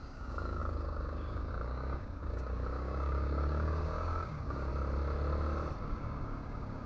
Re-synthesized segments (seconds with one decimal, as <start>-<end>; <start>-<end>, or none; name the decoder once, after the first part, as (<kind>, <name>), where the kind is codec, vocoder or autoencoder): 0.0-4.7 (codec, DAC); 5.8-6.9